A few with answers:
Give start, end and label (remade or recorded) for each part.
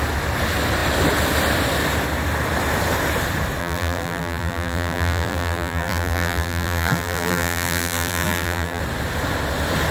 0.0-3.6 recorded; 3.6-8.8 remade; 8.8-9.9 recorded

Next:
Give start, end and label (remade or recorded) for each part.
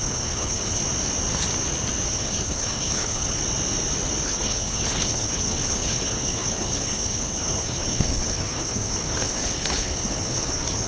0.0-0.8 remade; 0.8-2.1 recorded; 2.1-3.4 remade; 3.4-4.2 recorded; 4.2-10.9 remade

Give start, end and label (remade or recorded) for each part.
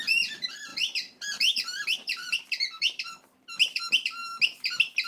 0.0-0.7 recorded; 0.7-3.8 remade; 3.8-5.1 recorded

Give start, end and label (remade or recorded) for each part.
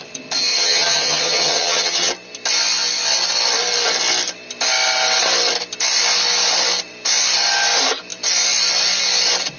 0.0-0.5 recorded; 0.5-2.1 remade; 2.1-9.6 recorded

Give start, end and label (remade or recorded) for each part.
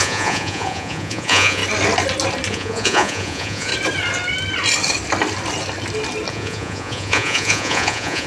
0.0-1.6 remade; 1.6-2.5 recorded; 2.5-3.7 remade; 3.7-6.3 recorded; 6.3-8.3 remade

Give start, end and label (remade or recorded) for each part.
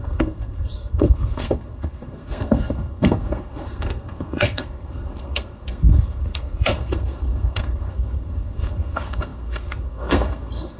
0.0-10.8 remade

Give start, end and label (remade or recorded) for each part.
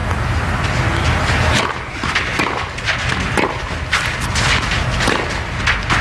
0.0-6.0 recorded